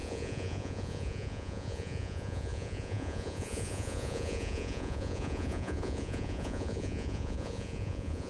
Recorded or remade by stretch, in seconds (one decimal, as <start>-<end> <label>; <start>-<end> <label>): 0.0-8.3 remade